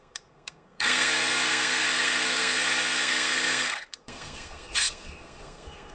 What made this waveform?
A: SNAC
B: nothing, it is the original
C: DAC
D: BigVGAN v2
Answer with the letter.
A